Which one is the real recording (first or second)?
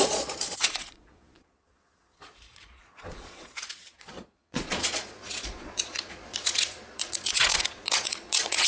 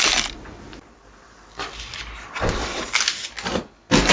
second